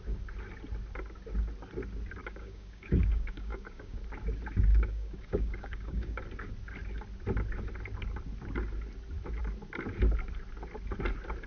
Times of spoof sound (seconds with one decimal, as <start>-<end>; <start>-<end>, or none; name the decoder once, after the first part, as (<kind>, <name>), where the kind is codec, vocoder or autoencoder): 2.2-4.0 (codec, DAC); 4.7-6.2